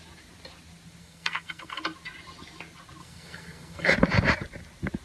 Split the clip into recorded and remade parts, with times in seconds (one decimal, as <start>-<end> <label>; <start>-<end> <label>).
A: 0.0-1.0 recorded; 1.0-1.8 remade; 1.8-3.0 recorded; 3.0-3.9 remade; 3.9-5.0 recorded